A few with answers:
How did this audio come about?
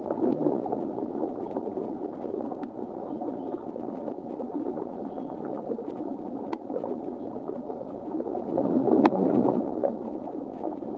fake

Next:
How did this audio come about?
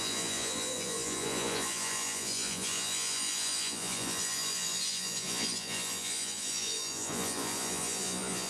fake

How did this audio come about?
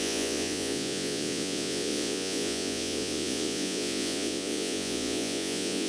fake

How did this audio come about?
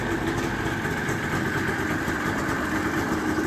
real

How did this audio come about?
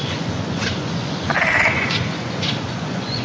fake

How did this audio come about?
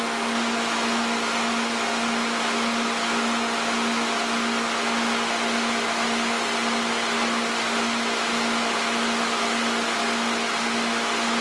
real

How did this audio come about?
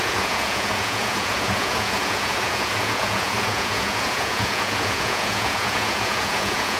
fake